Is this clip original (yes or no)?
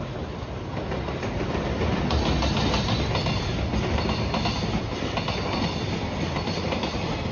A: yes